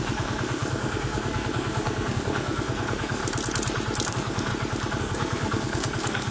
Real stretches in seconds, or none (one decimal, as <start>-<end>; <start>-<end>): 3.2-4.1; 4.5-5.0